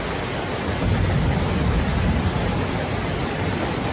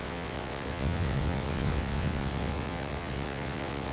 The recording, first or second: first